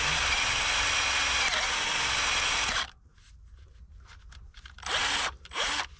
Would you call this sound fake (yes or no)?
no